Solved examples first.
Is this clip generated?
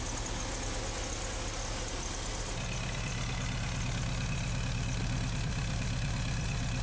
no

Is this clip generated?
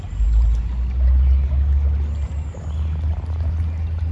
no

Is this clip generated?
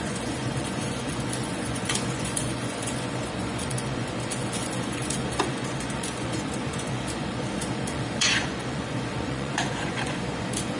yes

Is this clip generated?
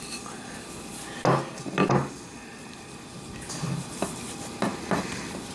no